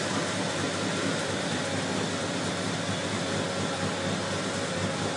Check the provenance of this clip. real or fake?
real